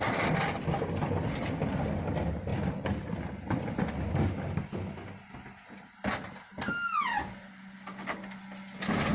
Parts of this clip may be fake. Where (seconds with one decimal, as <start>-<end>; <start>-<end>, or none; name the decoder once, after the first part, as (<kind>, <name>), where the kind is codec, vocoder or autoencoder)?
none